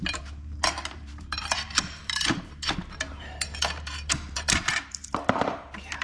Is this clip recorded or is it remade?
remade